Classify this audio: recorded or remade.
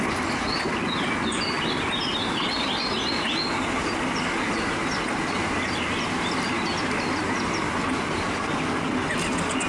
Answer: recorded